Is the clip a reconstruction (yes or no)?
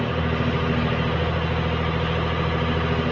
no